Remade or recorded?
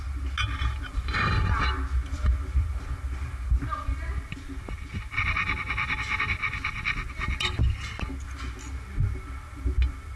recorded